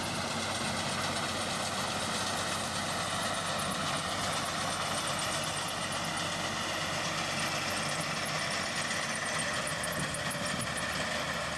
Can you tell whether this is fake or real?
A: real